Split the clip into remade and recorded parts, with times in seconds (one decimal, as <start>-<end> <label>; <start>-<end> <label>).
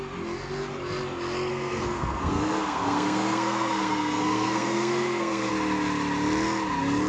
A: 0.0-1.5 recorded; 1.5-5.5 remade; 5.5-7.1 recorded